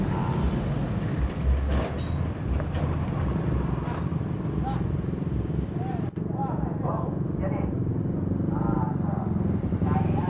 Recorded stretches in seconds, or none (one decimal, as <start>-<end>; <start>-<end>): 0.0-10.3